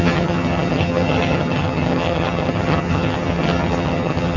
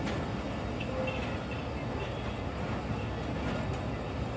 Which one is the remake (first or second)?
first